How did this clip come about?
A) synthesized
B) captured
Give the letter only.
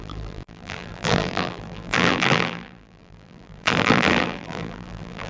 A